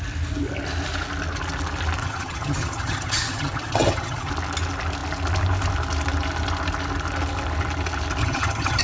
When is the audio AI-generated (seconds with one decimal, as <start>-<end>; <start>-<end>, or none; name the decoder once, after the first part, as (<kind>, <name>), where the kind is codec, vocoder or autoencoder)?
2.0-4.3 (vocoder, HiFi-GAN); 8.2-8.8